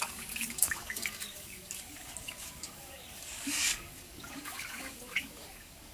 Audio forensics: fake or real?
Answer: fake